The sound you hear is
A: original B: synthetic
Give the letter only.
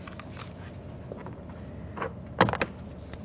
A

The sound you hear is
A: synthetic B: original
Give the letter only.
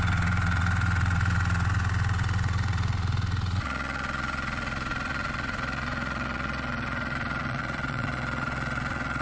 A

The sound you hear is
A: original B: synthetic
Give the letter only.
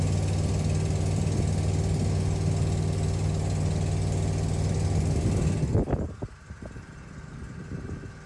A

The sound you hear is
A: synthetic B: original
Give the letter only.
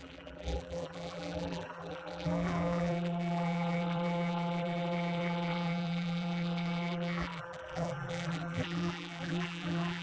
A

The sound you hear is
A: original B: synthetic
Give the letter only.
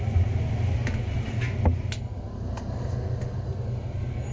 A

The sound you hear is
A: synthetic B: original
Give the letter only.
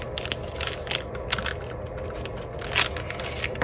B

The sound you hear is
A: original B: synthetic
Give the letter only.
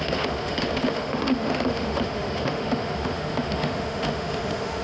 B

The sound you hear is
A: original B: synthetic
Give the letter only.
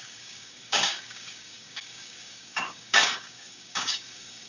B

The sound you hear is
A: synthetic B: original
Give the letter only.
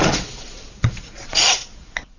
A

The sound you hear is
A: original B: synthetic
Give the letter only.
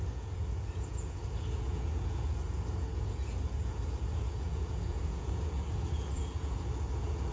B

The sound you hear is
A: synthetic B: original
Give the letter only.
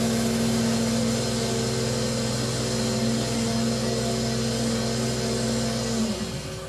B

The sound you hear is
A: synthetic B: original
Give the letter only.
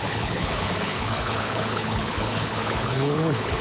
A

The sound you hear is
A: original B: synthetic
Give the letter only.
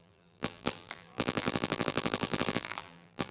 B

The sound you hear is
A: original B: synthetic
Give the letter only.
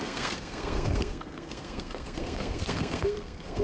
B